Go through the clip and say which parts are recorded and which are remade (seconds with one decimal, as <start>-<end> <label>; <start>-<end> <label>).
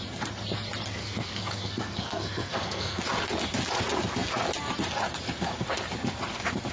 0.0-1.0 recorded; 1.0-3.0 remade; 3.0-6.7 recorded